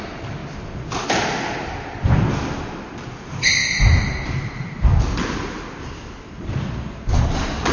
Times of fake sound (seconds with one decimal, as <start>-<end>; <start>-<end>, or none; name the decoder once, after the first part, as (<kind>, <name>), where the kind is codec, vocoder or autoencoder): 3.6-4.1 (vocoder, BigVGAN v2)